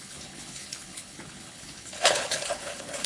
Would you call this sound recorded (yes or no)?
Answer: no